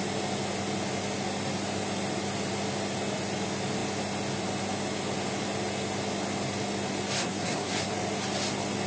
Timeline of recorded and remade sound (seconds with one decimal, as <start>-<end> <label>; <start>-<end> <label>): 0.0-7.2 recorded; 7.2-7.9 remade; 7.9-8.9 recorded